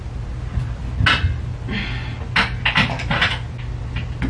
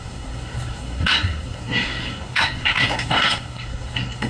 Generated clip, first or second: second